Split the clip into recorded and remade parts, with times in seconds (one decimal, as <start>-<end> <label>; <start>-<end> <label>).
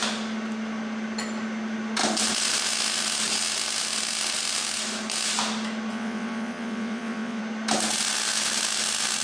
0.0-5.9 recorded; 5.9-7.4 remade; 7.4-9.2 recorded